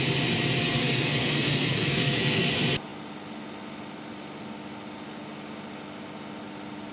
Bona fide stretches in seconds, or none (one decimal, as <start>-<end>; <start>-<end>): 0.0-0.6; 2.5-6.9